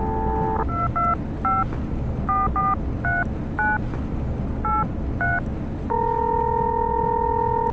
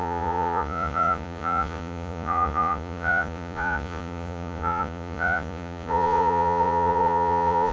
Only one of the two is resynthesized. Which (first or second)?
second